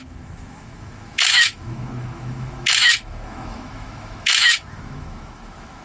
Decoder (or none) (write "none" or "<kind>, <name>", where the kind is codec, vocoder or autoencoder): autoencoder, DAC-VAE